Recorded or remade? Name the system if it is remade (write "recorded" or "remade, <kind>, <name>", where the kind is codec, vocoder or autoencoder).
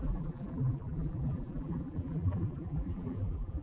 remade, vocoder, BigVGAN v2